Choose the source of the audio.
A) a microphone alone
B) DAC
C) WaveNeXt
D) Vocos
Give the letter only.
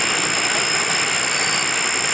A